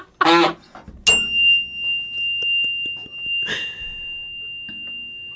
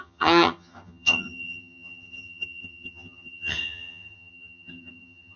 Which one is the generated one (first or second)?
second